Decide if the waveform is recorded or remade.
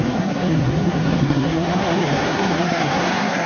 remade